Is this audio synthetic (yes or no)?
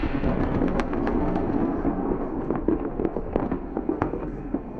yes